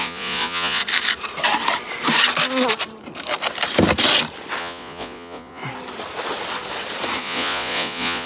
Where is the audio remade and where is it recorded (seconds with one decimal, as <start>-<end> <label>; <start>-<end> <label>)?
0.0-0.8 remade; 0.8-4.6 recorded; 4.6-5.6 remade; 5.6-7.2 recorded; 7.2-8.3 remade